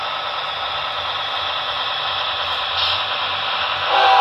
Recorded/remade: recorded